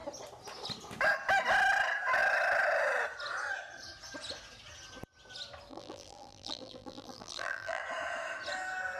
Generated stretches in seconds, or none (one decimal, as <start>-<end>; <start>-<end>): 5.7-7.8